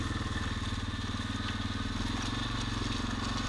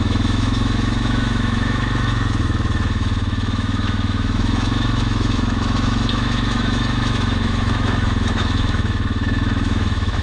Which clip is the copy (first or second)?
second